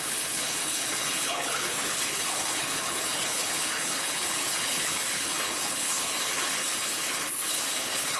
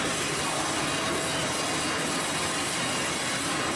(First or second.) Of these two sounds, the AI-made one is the first